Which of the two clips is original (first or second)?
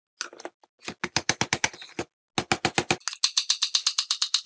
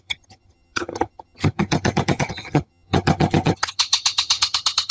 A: first